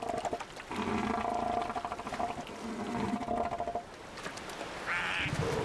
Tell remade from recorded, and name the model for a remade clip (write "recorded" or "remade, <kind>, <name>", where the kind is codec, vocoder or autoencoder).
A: recorded